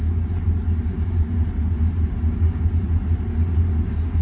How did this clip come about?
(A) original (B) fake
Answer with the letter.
A